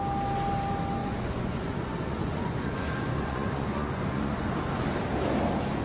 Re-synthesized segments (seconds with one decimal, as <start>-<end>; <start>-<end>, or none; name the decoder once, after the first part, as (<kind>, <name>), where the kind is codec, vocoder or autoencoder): 1.0-4.5 (vocoder, Vocos)